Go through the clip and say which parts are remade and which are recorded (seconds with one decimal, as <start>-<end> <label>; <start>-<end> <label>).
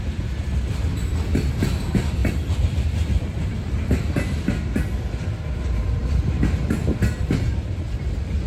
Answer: 0.0-0.4 recorded; 0.4-1.1 remade; 1.1-2.2 recorded; 2.2-4.0 remade; 4.0-6.0 recorded; 6.0-6.7 remade; 6.7-8.5 recorded